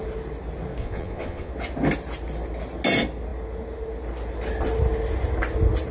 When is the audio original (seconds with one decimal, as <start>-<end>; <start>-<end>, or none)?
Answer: 0.0-0.8; 1.5-5.9